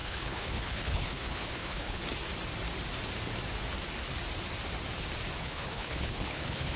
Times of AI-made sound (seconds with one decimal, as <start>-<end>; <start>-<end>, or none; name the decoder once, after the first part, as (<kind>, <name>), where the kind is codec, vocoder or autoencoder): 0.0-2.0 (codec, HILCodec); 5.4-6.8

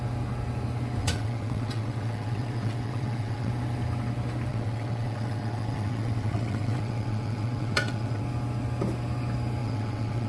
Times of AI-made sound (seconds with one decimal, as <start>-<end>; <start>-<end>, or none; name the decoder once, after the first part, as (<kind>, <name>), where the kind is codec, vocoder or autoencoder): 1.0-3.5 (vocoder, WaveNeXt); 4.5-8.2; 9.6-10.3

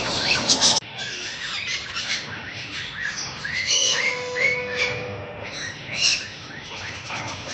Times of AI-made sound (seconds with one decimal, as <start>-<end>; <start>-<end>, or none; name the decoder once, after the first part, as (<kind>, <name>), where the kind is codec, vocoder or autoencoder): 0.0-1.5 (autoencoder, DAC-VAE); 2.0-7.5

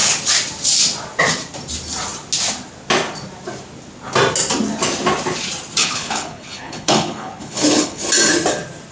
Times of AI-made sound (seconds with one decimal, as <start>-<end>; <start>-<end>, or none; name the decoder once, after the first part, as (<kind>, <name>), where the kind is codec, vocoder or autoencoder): 5.8-8.0 (codec, HILCodec)

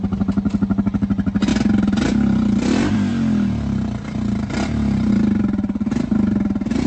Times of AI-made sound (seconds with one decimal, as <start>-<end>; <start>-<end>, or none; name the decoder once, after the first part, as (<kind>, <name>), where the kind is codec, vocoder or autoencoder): none